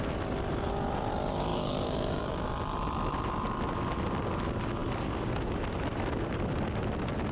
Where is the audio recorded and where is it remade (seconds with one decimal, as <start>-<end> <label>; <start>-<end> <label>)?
0.0-1.5 recorded; 1.5-2.5 remade; 2.5-7.3 recorded

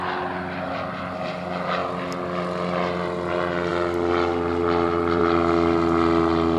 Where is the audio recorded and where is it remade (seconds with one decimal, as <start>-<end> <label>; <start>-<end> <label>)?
0.0-3.7 recorded; 3.7-5.2 remade; 5.2-6.6 recorded

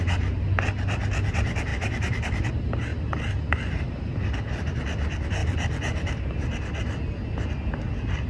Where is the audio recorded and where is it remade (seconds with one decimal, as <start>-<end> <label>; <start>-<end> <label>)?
0.0-1.7 recorded; 1.7-2.5 remade; 2.5-2.9 recorded; 2.9-4.0 remade; 4.0-5.4 recorded; 5.4-6.3 remade; 6.3-8.3 recorded

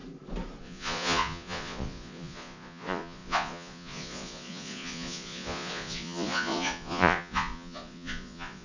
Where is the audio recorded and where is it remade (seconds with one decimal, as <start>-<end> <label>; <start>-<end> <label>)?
0.0-0.6 recorded; 0.6-8.6 remade

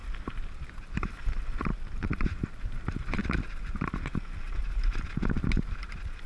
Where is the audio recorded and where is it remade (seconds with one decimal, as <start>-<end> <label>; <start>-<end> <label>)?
0.0-0.9 remade; 0.9-1.7 recorded; 1.7-2.2 remade; 2.2-6.3 recorded

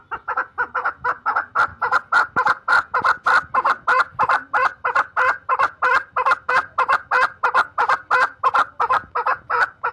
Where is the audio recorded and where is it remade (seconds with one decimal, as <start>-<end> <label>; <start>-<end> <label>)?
0.0-9.9 recorded

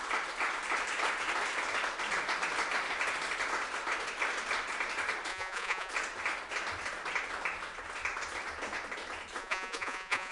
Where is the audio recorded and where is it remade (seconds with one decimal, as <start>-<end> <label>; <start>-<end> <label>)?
0.0-5.3 recorded; 5.3-5.9 remade; 5.9-9.4 recorded; 9.4-10.3 remade

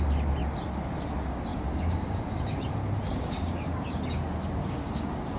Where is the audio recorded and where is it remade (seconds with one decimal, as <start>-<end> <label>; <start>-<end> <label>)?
0.0-1.5 recorded; 1.5-2.2 remade; 2.2-3.1 recorded; 3.1-3.9 remade; 3.9-4.6 recorded; 4.6-5.4 remade